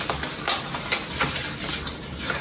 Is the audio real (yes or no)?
yes